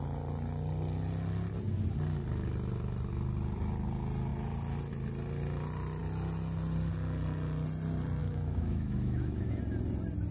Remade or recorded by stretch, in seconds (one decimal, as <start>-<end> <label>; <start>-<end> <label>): 0.0-8.2 recorded; 8.2-9.6 remade; 9.6-10.3 recorded